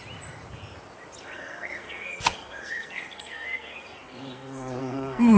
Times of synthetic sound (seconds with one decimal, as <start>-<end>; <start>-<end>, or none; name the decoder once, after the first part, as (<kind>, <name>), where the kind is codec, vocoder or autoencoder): 1.2-5.4 (codec, SNAC)